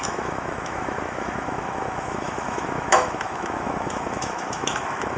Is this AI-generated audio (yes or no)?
yes